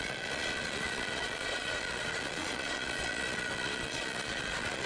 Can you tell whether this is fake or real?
fake